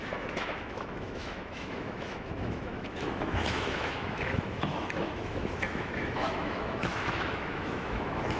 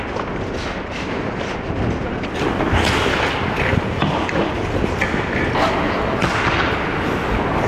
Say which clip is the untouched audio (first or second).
second